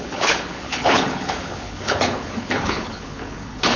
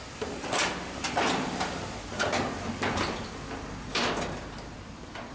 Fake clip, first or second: first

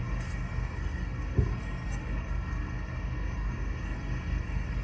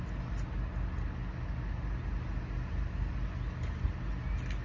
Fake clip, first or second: first